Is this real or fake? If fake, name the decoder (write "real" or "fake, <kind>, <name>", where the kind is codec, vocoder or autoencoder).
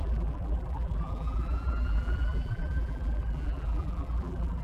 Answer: fake, vocoder, BigVGAN v2